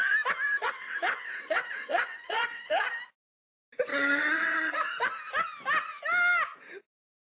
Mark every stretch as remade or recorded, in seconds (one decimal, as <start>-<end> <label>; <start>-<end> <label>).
0.0-0.6 recorded; 0.6-2.8 remade; 2.8-3.9 recorded; 3.9-4.9 remade; 4.9-7.3 recorded